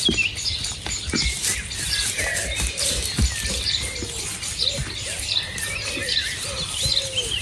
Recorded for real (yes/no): yes